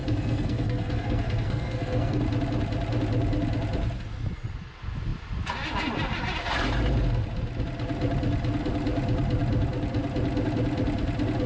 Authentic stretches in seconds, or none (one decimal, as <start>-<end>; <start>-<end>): 2.2-11.5

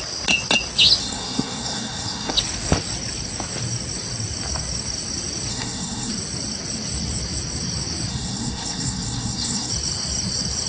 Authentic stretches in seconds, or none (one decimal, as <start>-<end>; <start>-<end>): 0.0-1.0; 2.3-5.5; 6.1-8.1; 9.7-10.7